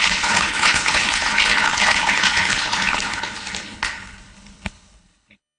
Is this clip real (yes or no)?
no